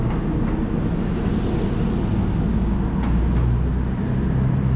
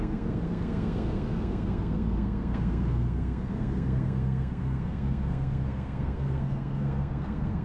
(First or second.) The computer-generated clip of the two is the second